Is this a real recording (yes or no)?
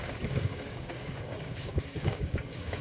no